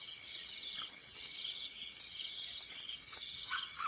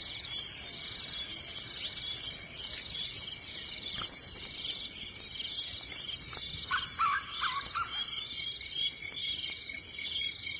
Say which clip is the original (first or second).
second